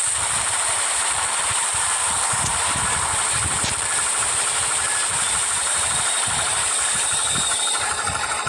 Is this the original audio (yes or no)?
no